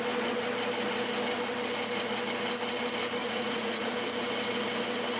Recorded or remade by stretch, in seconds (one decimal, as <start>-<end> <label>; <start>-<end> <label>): 0.0-3.2 recorded; 3.2-3.9 remade; 3.9-5.2 recorded